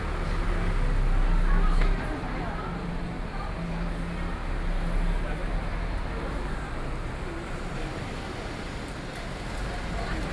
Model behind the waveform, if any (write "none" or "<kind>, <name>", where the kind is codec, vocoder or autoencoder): none